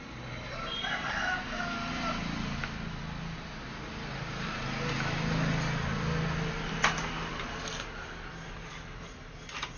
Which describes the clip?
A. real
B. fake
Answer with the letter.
A